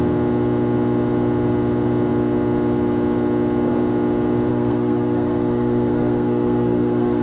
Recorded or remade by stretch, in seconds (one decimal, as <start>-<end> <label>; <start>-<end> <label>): 0.0-4.5 recorded; 4.5-7.2 remade